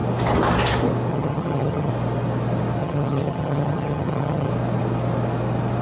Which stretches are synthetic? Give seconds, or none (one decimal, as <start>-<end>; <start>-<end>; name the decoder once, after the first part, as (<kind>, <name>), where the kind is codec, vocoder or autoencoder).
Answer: 1.1-1.9 (vocoder, HiFi-GAN); 2.8-4.5